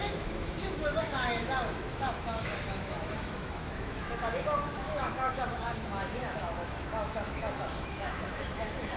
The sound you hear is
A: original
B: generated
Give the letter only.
B